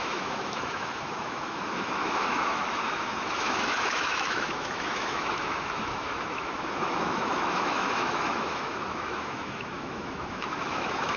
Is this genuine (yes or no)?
no